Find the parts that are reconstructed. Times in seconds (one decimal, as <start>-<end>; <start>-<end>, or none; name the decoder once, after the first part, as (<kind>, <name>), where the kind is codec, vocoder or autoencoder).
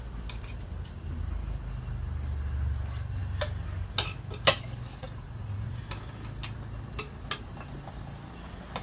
5.0-5.8 (vocoder, Vocos)